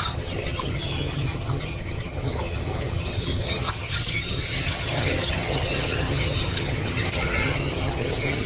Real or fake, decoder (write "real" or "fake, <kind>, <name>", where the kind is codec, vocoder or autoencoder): fake, vocoder, HiFi-GAN